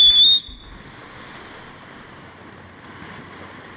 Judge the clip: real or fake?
real